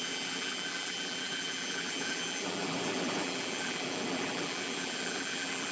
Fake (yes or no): yes